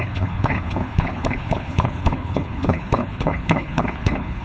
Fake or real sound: fake